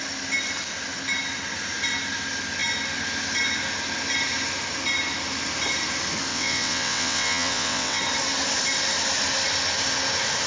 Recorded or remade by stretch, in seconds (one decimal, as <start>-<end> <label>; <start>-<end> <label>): 0.0-6.3 recorded; 6.3-8.0 remade; 8.0-10.5 recorded